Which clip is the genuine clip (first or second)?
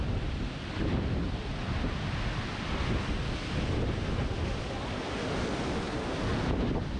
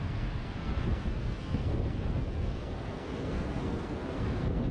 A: first